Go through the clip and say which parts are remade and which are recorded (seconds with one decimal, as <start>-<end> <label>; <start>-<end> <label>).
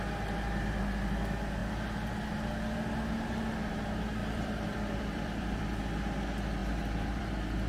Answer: 0.0-4.2 recorded; 4.2-5.6 remade; 5.6-7.7 recorded